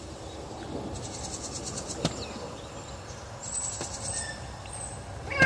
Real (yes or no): no